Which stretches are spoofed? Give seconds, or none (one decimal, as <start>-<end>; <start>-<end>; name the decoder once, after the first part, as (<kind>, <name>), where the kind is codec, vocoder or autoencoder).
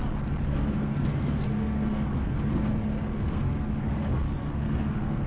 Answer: 0.5-3.7 (codec, SNAC); 4.4-5.3